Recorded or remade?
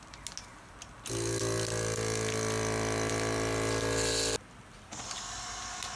recorded